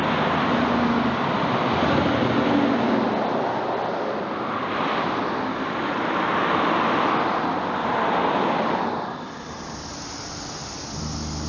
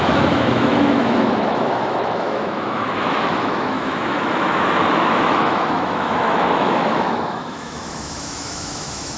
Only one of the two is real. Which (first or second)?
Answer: first